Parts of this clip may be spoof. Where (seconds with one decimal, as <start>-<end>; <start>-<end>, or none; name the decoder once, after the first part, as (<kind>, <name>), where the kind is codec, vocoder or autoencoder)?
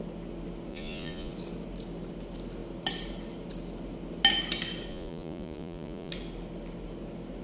0.7-1.3 (vocoder, Vocos); 4.9-6.1